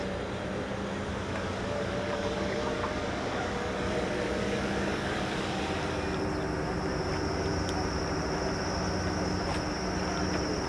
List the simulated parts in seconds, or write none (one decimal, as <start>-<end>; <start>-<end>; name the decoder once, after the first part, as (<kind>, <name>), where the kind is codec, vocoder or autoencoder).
1.1-5.6 (codec, DAC)

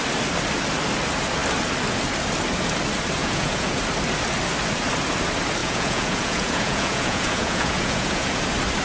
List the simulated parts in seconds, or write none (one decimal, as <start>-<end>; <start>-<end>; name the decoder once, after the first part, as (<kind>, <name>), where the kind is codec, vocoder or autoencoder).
3.2-3.8 (vocoder, Vocos); 5.6-8.4

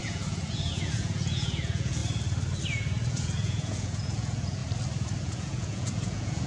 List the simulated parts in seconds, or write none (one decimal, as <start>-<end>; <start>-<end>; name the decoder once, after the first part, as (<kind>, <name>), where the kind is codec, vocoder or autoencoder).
0.0-2.0 (vocoder, Vocos); 3.1-4.6; 5.2-6.5

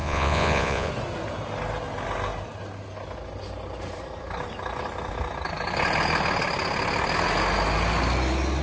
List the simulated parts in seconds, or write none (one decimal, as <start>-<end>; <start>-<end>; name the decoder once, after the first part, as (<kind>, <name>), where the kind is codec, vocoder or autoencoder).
0.0-0.9 (vocoder, Vocos)

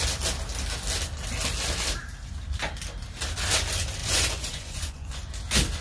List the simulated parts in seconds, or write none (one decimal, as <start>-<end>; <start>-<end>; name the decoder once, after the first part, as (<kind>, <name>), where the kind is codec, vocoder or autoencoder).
4.0-5.3 (vocoder, Vocos)